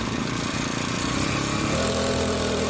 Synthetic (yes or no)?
no